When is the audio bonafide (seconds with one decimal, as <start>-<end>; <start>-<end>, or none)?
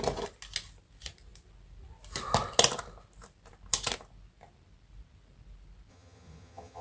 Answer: 0.0-5.9